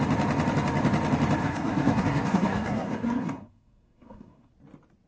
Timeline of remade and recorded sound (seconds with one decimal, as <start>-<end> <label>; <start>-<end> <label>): 0.0-1.4 recorded; 1.4-4.5 remade; 4.5-5.1 recorded